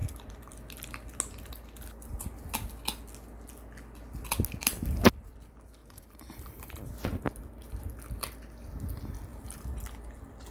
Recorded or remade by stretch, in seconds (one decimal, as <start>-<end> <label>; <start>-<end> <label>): 0.0-5.8 recorded; 5.8-6.9 remade; 6.9-10.5 recorded